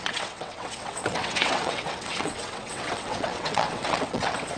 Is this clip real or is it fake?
fake